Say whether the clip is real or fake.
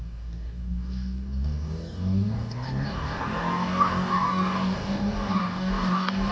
fake